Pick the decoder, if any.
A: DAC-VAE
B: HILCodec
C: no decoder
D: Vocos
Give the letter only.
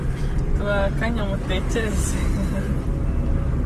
C